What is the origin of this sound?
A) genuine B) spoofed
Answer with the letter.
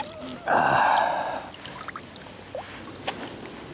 A